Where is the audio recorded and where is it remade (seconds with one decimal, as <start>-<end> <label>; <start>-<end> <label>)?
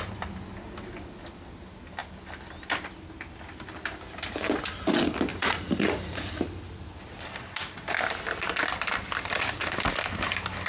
0.0-5.3 recorded; 5.3-6.3 remade; 6.3-10.7 recorded